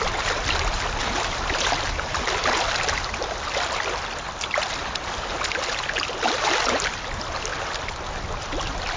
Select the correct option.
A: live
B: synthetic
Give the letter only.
A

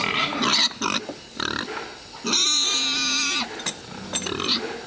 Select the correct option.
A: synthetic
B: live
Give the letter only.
B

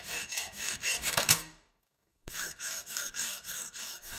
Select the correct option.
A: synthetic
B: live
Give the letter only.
A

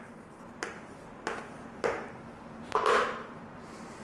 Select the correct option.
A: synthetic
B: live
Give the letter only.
B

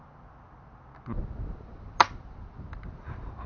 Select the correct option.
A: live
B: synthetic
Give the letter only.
A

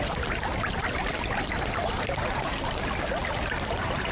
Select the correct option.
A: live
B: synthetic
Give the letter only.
A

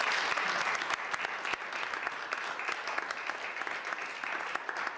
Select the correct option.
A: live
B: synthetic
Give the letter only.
A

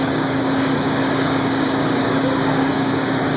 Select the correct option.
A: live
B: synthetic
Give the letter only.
B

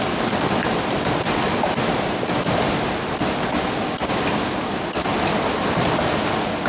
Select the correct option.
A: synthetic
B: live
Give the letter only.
B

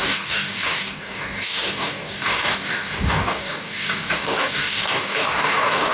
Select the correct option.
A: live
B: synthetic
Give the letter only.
B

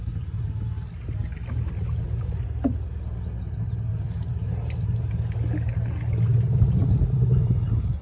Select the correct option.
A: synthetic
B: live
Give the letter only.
B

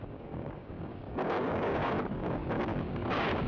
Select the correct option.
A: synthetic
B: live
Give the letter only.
A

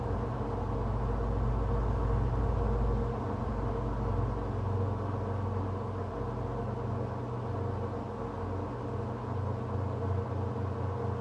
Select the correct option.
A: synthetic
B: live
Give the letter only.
B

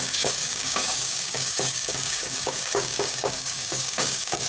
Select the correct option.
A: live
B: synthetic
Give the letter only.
B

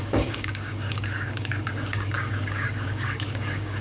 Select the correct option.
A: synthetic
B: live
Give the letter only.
A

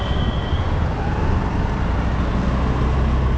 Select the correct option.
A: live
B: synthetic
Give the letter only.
A